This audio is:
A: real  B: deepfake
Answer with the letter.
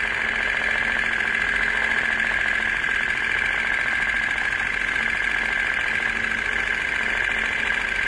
A